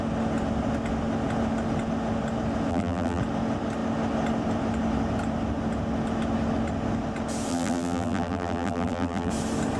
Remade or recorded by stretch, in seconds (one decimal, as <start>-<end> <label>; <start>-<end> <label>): 0.0-2.7 recorded; 2.7-3.2 remade; 3.2-7.5 recorded; 7.5-9.3 remade; 9.3-9.8 recorded